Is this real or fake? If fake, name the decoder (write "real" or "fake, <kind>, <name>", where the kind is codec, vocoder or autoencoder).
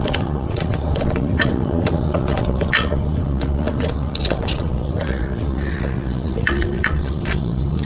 fake, vocoder, WaveNeXt